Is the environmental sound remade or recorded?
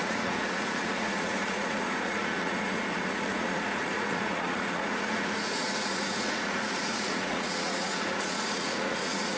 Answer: remade